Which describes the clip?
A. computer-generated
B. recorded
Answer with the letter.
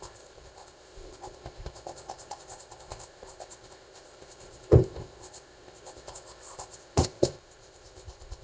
A